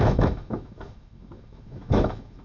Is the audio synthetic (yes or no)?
yes